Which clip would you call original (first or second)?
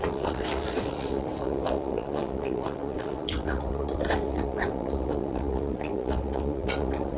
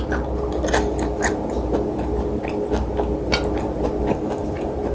second